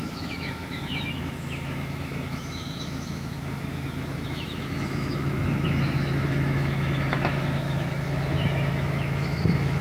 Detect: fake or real fake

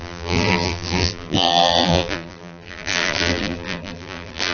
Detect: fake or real fake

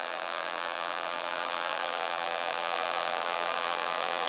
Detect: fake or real fake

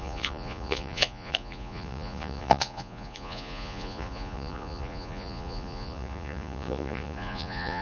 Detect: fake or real fake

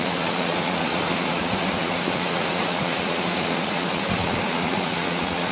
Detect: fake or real fake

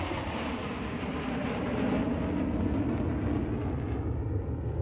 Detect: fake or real real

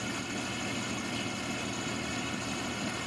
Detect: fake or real real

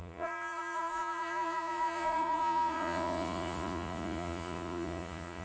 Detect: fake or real fake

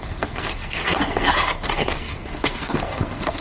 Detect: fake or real fake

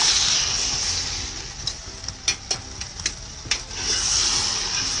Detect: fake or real real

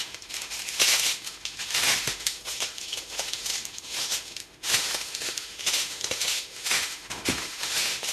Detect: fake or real fake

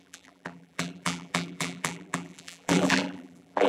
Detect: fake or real fake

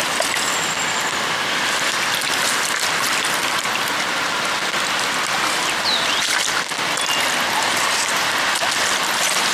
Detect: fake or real real